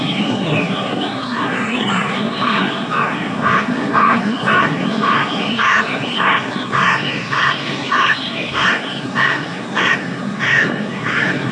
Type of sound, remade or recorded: remade